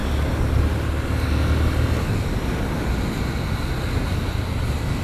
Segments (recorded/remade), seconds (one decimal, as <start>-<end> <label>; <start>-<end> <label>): 0.0-5.0 recorded